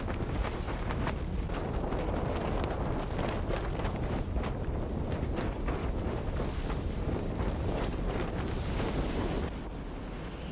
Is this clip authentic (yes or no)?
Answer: yes